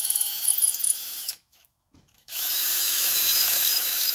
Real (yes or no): no